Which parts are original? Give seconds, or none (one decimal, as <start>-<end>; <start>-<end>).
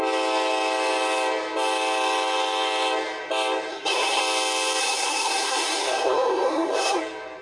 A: 0.0-3.7; 4.2-4.8; 7.0-7.4